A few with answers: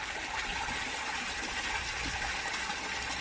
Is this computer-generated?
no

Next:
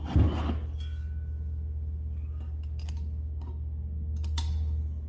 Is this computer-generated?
no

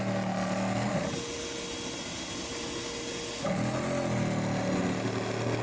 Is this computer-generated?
no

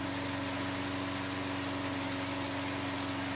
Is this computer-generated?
no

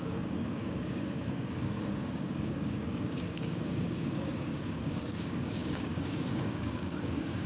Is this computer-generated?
yes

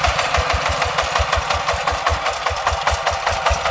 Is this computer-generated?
no